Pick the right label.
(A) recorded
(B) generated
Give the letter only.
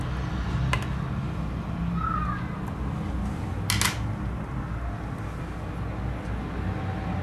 A